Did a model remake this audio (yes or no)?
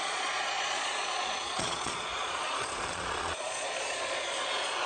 yes